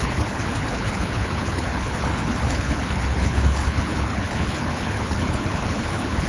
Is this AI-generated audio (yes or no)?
yes